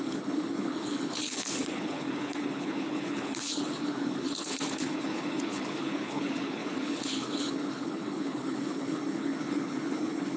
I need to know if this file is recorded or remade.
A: remade